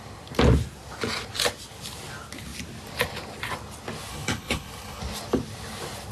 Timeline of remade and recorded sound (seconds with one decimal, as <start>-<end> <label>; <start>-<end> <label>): 0.0-4.1 recorded; 4.1-5.0 remade; 5.0-6.1 recorded